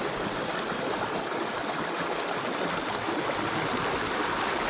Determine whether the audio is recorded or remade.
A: recorded